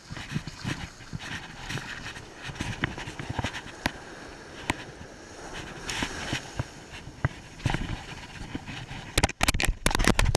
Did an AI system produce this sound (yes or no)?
no